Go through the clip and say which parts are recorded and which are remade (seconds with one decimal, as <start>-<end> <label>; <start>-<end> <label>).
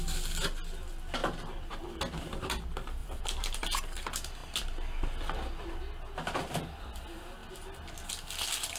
0.0-1.2 recorded; 1.2-1.9 remade; 1.9-3.0 recorded; 3.0-3.8 remade; 3.8-8.8 recorded